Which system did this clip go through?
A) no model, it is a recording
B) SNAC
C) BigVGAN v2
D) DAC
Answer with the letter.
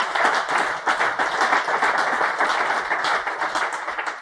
A